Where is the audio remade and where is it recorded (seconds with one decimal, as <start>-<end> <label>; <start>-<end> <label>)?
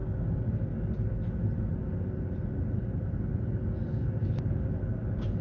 0.0-0.7 remade; 0.7-5.4 recorded